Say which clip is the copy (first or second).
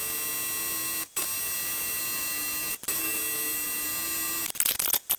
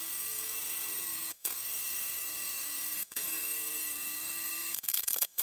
second